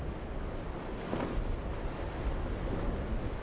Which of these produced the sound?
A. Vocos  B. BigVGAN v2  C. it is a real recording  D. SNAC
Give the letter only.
C